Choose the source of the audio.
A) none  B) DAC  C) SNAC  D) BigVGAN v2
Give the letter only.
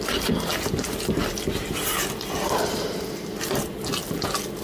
A